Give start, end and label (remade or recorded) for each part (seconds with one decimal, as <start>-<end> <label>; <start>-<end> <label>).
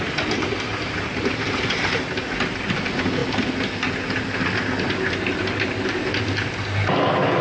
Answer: 0.0-0.7 recorded; 0.7-2.3 remade; 2.3-7.4 recorded